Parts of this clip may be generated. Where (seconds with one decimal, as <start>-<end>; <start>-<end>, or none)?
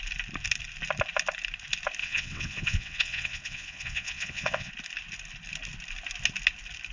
2.0-4.7